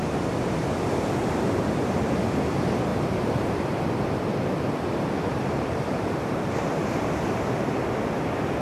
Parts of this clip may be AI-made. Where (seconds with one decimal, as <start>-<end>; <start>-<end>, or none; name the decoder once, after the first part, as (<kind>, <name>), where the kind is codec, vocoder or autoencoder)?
2.9-3.8 (vocoder, BigVGAN v2); 5.3-7.3

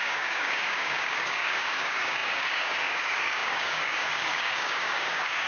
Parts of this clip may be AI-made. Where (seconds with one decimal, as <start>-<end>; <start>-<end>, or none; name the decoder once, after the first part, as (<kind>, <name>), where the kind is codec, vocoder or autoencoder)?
0.0-5.5 (codec, DAC)

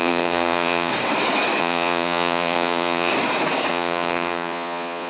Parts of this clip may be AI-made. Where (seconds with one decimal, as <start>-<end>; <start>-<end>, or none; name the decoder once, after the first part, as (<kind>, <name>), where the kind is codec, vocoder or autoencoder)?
0.0-0.9 (vocoder, Vocos); 1.6-3.1; 3.7-5.1

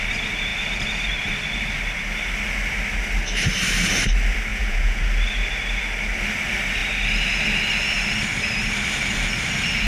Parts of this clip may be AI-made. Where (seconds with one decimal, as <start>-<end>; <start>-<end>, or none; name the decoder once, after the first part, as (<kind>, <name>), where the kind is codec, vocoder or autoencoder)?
4.5-5.0 (vocoder, Vocos)

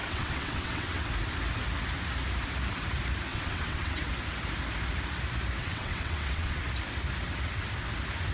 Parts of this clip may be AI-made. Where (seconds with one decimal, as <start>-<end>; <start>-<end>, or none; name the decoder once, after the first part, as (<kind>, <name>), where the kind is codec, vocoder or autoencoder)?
0.0-1.1 (vocoder, WaveNeXt); 3.3-4.1; 5.6-6.6

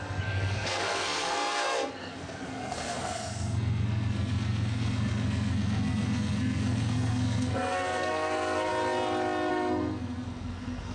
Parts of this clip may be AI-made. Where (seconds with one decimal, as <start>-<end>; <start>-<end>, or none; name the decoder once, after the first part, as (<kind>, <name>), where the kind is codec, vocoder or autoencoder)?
0.0-8.7 (codec, SNAC); 9.5-10.9

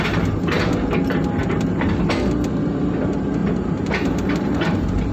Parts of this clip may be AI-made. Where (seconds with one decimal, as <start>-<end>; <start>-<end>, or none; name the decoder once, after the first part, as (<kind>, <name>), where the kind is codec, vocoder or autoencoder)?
1.4-2.0 (vocoder, BigVGAN v2); 3.4-5.1